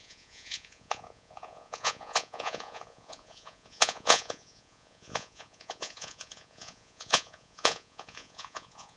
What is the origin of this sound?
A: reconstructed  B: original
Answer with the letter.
A